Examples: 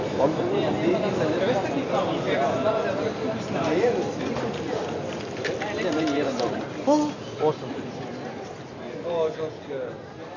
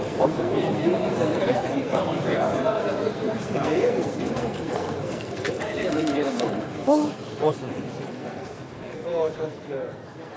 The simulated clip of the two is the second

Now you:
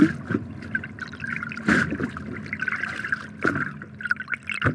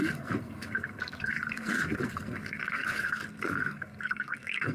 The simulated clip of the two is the second